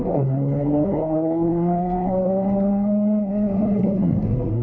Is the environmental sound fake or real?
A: fake